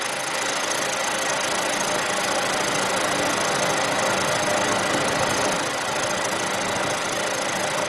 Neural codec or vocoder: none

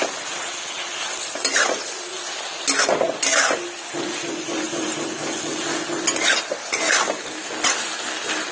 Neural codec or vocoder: none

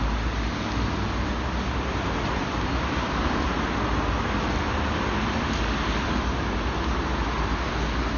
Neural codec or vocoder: none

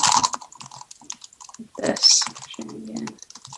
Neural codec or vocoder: none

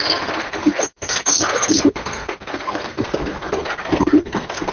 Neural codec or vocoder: codec, SNAC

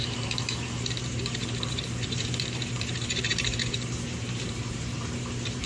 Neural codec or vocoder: vocoder, BigVGAN v2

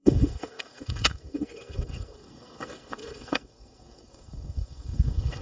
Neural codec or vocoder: codec, SNAC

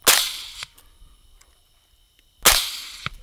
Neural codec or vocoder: none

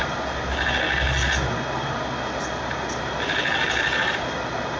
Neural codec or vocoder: none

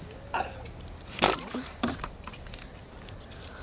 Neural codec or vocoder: none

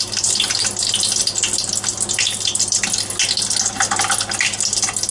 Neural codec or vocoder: none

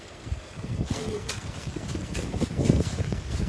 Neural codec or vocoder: codec, SNAC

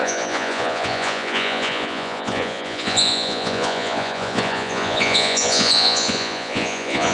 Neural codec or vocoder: vocoder, Vocos